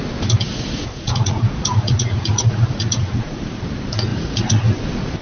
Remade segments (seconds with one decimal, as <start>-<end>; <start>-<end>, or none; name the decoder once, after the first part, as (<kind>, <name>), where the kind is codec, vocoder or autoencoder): 0.5-3.6 (vocoder, Vocos); 4.1-4.6